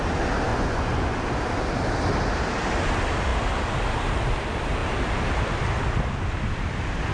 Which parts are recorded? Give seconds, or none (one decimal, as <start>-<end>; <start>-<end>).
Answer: 0.0-0.5; 1.2-7.1